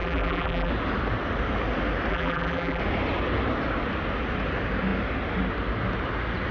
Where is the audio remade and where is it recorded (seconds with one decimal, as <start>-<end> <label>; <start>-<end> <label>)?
0.0-0.7 remade; 0.7-2.1 recorded; 2.1-2.8 remade; 2.8-6.5 recorded